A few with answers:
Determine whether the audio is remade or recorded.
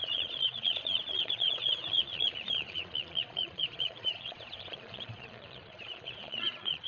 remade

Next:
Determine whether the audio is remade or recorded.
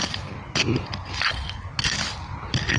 recorded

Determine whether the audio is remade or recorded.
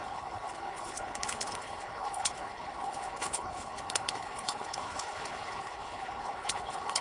remade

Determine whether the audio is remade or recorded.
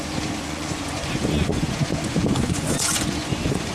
remade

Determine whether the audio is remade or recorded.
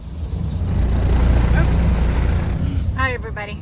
recorded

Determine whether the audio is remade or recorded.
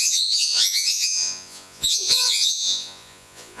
remade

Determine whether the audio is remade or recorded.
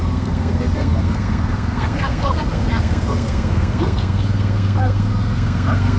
remade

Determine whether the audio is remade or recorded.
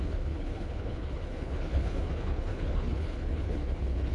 remade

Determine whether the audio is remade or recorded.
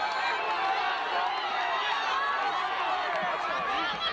recorded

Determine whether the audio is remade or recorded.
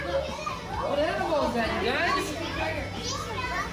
recorded